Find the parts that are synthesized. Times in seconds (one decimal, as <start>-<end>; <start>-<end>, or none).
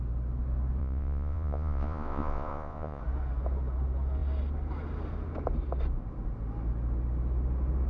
0.8-3.0